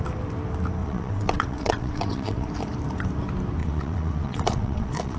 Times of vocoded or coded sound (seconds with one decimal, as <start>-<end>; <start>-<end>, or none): 0.8-2.5; 3.6-5.2